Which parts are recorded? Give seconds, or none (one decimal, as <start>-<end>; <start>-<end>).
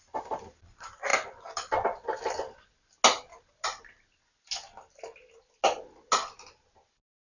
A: 0.0-7.2